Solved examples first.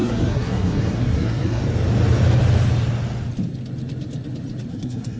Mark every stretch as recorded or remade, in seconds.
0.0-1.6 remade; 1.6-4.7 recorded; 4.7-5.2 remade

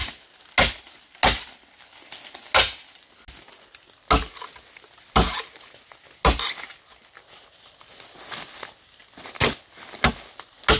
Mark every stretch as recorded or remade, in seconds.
0.0-10.8 recorded

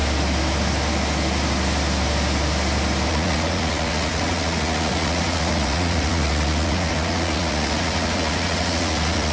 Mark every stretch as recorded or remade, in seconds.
0.0-3.1 recorded; 3.1-9.3 remade

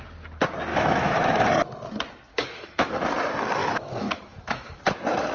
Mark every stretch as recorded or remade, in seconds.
0.0-0.7 recorded; 0.7-1.5 remade; 1.5-2.3 recorded; 2.3-2.9 remade; 2.9-3.6 recorded; 3.6-4.8 remade; 4.8-5.3 recorded

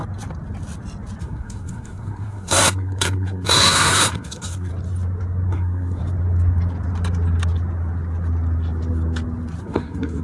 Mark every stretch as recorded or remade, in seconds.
0.0-1.2 recorded; 1.2-4.7 remade; 4.7-5.5 recorded; 5.5-6.0 remade; 6.0-9.6 recorded; 9.6-10.2 remade

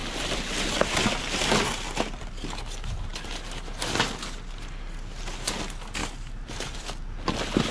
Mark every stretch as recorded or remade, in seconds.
0.0-2.3 remade; 2.3-6.0 recorded; 6.0-7.0 remade; 7.0-7.7 recorded

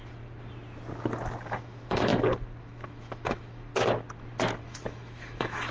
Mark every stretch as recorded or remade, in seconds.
0.0-1.5 recorded; 1.5-2.1 remade; 2.1-2.6 recorded; 2.6-3.7 remade; 3.7-4.6 recorded; 4.6-5.7 remade

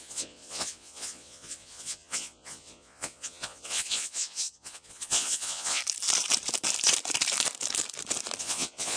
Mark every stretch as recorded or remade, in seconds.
0.0-5.8 remade; 5.8-8.4 recorded; 8.4-9.0 remade